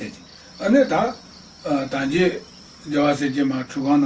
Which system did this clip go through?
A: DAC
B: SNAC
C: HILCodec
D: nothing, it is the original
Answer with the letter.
D